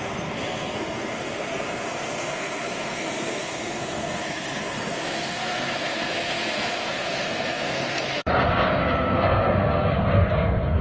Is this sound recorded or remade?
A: remade